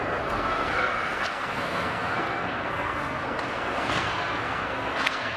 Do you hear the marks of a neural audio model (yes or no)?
yes